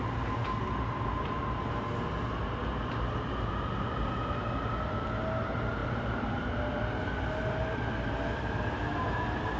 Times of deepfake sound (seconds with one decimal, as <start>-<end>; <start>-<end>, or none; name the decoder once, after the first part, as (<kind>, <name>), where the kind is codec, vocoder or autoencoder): 5.8-7.8 (vocoder, BigVGAN v2)